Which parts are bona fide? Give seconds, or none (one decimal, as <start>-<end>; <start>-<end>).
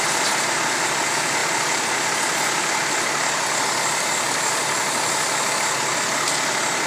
0.0-6.9